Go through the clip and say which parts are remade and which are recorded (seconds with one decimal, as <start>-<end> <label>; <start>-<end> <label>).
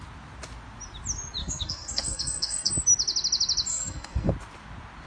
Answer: 0.0-1.4 recorded; 1.4-2.7 remade; 2.7-3.7 recorded; 3.7-4.3 remade; 4.3-5.1 recorded